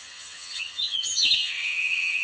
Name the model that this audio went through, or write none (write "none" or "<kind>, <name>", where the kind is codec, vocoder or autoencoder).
vocoder, HiFi-GAN